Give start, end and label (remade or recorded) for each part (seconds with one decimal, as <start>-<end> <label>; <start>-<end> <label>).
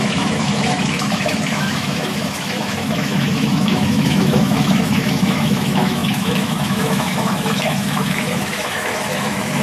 0.0-9.6 remade